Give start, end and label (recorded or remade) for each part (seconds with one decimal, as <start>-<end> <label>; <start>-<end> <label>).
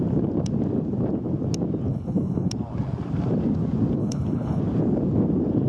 0.0-1.9 recorded; 1.9-2.5 remade; 2.5-4.0 recorded; 4.0-4.6 remade; 4.6-5.7 recorded